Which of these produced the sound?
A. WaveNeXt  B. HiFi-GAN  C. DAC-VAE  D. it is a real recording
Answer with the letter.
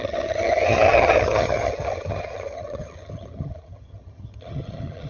B